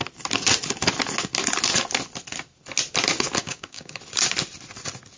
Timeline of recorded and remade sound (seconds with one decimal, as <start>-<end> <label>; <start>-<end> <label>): 0.0-3.4 recorded; 3.4-4.0 remade; 4.0-5.2 recorded